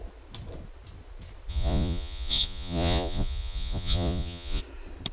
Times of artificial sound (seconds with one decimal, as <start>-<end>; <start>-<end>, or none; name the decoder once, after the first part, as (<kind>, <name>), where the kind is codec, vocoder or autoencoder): 1.5-4.6 (vocoder, Vocos)